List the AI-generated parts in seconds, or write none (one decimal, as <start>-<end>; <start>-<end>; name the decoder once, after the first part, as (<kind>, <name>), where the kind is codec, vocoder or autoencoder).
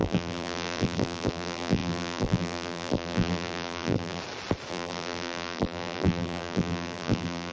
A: 0.0-4.2 (vocoder, BigVGAN v2); 4.7-7.5